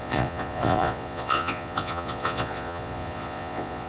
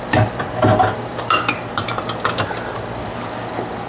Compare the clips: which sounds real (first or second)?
second